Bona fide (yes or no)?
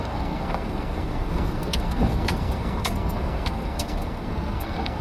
no